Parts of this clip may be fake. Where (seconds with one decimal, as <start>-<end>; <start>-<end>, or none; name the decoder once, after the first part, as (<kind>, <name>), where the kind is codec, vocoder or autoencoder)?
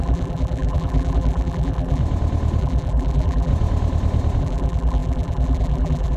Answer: 0.0-2.0 (vocoder, BigVGAN v2); 2.6-3.5; 4.4-6.2